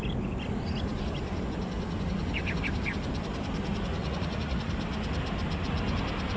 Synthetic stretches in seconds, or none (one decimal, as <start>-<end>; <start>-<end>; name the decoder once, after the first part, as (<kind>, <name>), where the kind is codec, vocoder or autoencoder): 4.0-4.7 (vocoder, Vocos)